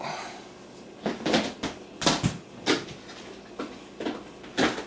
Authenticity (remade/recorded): recorded